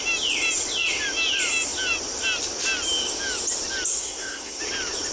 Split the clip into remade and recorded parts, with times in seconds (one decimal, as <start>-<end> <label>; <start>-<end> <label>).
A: 0.0-3.9 recorded; 3.9-4.6 remade; 4.6-5.1 recorded